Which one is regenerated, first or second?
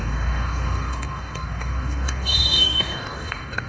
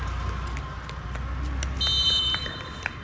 first